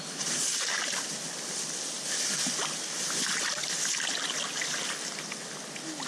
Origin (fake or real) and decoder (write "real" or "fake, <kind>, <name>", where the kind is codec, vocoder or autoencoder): real